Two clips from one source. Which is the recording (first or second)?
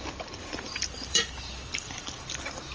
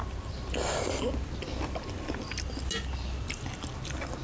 second